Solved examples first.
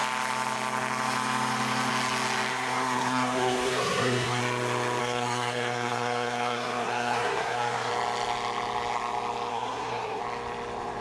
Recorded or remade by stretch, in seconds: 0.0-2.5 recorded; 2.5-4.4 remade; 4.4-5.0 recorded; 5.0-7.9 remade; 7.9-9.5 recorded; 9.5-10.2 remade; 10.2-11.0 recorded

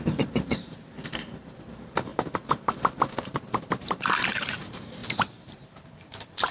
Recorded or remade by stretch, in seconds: 0.0-6.5 remade

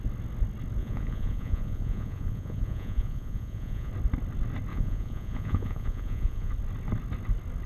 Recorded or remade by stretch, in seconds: 0.0-0.8 recorded; 0.8-3.9 remade; 3.9-4.7 recorded; 4.7-6.5 remade; 6.5-7.7 recorded

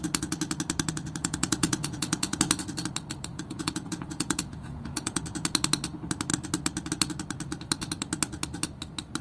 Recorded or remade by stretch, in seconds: 0.0-1.2 recorded; 1.2-2.4 remade; 2.4-3.3 recorded; 3.3-5.2 remade; 5.2-9.2 recorded

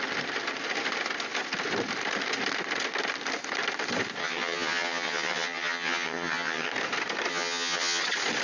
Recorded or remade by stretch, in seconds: 0.0-4.2 recorded; 4.2-6.7 remade; 6.7-7.3 recorded; 7.3-8.0 remade; 8.0-8.4 recorded

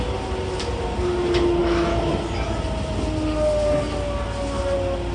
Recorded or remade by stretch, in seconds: 0.0-5.1 recorded